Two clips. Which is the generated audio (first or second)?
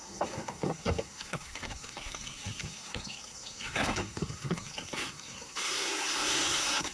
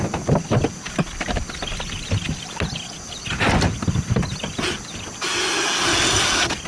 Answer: first